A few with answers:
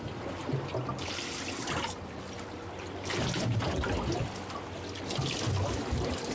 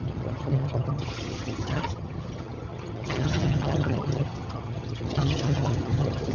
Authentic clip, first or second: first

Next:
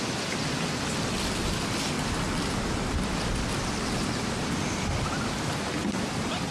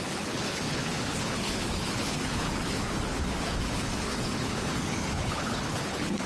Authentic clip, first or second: first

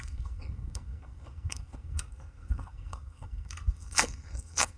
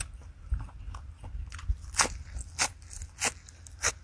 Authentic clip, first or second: second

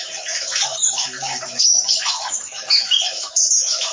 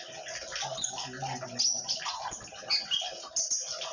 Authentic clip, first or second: second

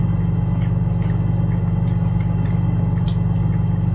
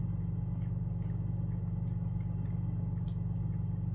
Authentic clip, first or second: first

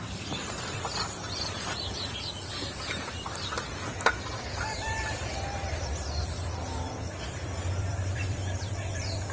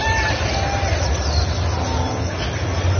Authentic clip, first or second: second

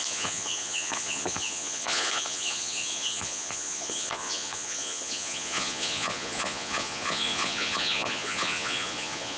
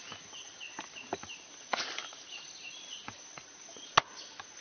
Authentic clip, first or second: second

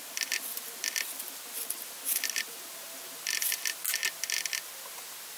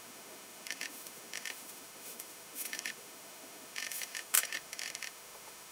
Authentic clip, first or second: first